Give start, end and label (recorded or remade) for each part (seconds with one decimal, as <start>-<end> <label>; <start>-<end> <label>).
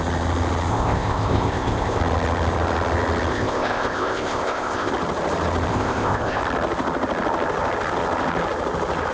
0.0-0.7 recorded; 0.7-2.0 remade; 2.0-3.3 recorded; 3.3-4.9 remade; 4.9-5.7 recorded; 5.7-6.4 remade; 6.4-9.1 recorded